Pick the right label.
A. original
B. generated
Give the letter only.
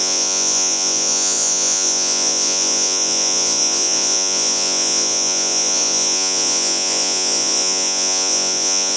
B